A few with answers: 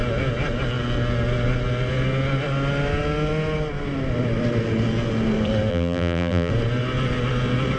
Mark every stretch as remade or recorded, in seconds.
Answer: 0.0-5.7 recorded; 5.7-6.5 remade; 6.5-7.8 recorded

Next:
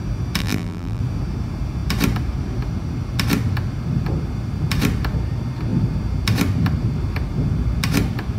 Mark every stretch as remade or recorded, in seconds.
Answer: 0.0-0.4 recorded; 0.4-1.0 remade; 1.0-8.4 recorded

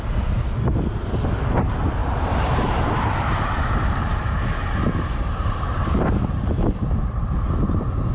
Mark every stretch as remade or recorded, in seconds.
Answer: 0.0-2.0 recorded; 2.0-6.9 remade; 6.9-8.1 recorded